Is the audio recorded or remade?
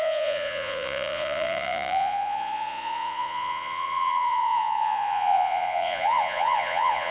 remade